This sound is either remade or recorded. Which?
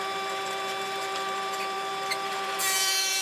remade